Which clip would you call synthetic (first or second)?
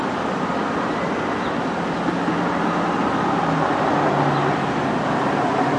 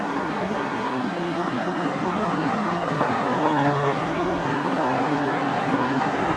second